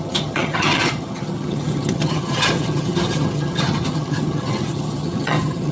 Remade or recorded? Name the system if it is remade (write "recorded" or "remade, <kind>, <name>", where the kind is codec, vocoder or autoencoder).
remade, vocoder, HiFi-GAN